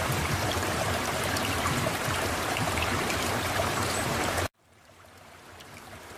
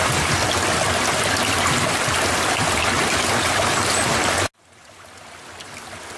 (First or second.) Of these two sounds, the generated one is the first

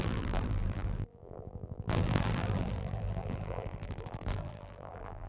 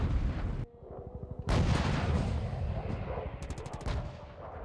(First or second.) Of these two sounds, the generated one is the first